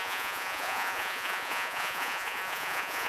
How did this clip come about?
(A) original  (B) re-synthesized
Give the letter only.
B